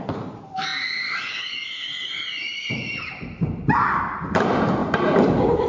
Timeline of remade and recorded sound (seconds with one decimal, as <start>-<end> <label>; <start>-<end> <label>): 0.0-0.7 remade; 0.7-2.6 recorded; 2.6-4.8 remade; 4.8-5.7 recorded